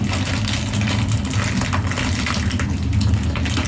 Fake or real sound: real